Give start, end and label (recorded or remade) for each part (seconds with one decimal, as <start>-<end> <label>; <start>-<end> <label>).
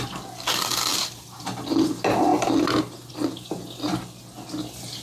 0.0-0.9 recorded; 0.9-1.5 remade; 1.5-5.0 recorded